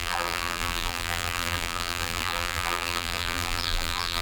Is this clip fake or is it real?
fake